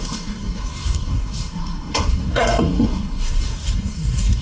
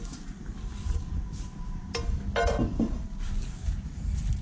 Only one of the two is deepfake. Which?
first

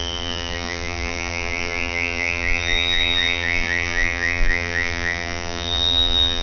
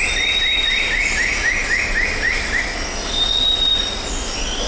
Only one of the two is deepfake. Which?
first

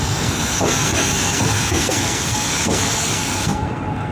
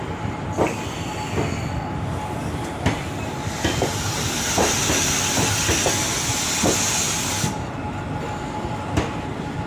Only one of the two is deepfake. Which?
first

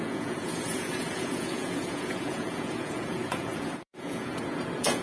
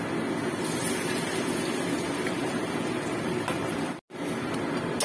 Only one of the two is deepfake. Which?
first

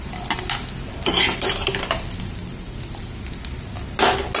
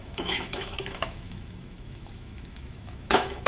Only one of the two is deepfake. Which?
second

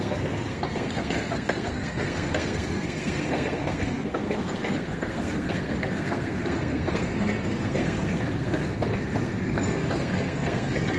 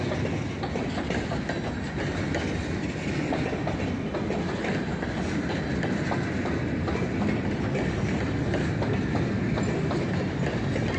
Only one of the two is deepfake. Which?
first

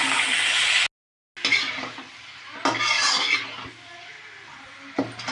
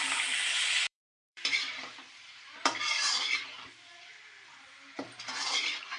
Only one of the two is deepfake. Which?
second